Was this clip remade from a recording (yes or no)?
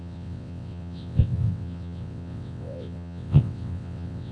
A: yes